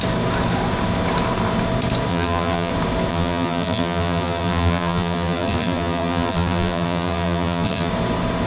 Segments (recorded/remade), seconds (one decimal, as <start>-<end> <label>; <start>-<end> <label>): 0.0-2.1 recorded; 2.1-2.7 remade; 2.7-3.1 recorded; 3.1-7.9 remade; 7.9-8.5 recorded